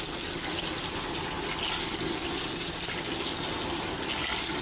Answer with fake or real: real